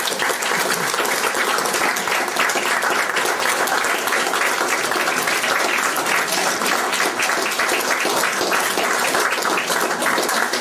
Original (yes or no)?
yes